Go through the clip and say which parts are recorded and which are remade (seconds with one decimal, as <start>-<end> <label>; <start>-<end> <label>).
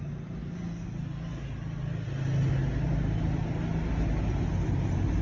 0.0-5.2 recorded